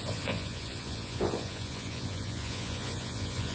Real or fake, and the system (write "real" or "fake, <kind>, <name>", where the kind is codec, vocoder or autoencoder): fake, vocoder, Vocos